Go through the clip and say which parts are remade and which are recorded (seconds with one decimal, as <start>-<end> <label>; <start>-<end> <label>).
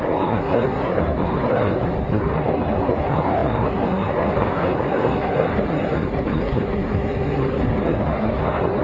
0.0-8.8 remade